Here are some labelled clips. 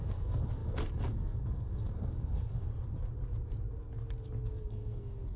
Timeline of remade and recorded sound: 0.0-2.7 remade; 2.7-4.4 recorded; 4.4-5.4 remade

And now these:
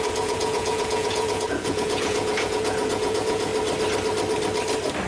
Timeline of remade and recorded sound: 0.0-3.5 remade; 3.5-5.1 recorded

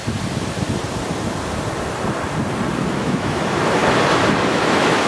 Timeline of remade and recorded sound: 0.0-2.9 recorded; 2.9-3.8 remade; 3.8-4.5 recorded; 4.5-5.1 remade

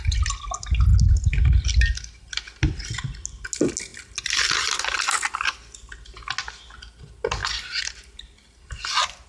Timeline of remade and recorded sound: 0.0-9.3 recorded